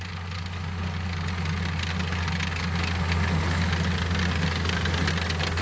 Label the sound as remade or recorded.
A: recorded